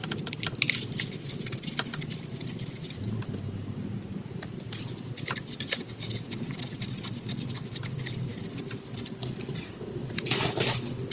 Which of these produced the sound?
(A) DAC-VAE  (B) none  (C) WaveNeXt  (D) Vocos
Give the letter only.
B